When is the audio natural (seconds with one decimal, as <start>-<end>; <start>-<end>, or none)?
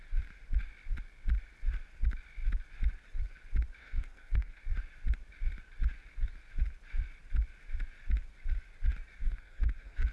0.0-3.8; 4.6-9.2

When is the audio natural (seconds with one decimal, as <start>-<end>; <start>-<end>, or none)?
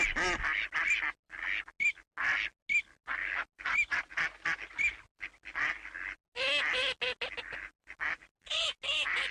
0.0-9.3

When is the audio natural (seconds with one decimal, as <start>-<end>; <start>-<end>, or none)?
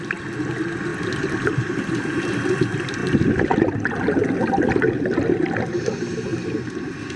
0.0-7.2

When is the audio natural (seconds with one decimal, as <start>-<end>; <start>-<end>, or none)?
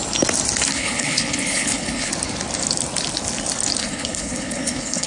0.0-0.7; 2.1-3.8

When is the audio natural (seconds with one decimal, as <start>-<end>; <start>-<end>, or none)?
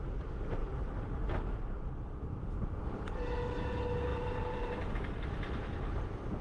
0.0-2.2; 2.8-4.1; 4.9-6.4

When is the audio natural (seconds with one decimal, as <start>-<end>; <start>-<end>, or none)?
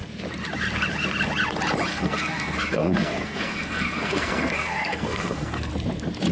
0.0-1.9; 5.7-6.3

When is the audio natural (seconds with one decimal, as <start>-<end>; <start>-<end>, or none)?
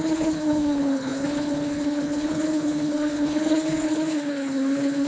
none